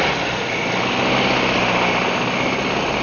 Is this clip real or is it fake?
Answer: real